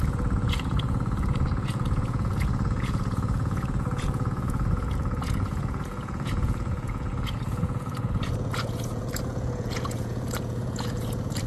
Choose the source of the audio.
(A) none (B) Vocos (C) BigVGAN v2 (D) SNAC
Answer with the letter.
B